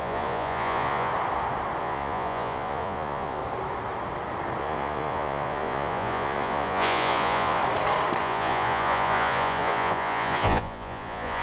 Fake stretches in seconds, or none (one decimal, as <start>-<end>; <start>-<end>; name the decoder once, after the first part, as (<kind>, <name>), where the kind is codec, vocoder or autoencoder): 0.0-1.1 (vocoder, Vocos); 1.8-3.4; 4.6-7.6; 8.2-11.4